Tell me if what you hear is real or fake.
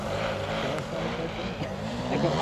fake